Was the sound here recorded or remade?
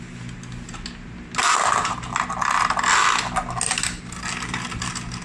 recorded